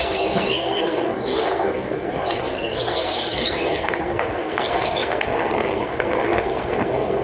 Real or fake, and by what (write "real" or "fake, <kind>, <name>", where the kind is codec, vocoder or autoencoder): fake, codec, SNAC